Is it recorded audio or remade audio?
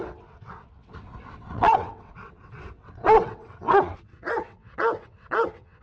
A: remade